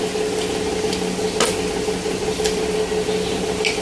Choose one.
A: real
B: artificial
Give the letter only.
A